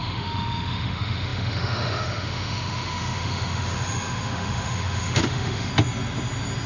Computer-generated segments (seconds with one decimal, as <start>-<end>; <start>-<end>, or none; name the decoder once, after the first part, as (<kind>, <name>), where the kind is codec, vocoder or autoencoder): 0.0-5.7 (autoencoder, DAC-VAE)